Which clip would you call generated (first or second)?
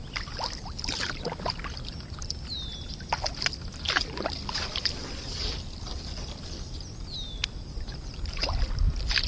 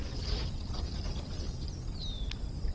second